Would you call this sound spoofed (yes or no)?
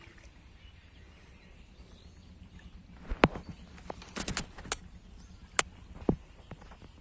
no